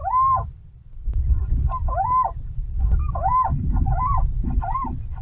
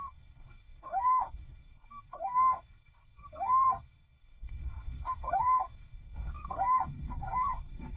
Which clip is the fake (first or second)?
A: second